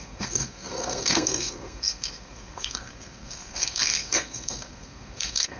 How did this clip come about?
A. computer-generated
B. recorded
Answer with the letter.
A